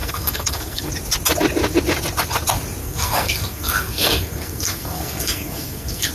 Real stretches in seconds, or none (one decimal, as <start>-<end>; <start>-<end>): 0.9-2.8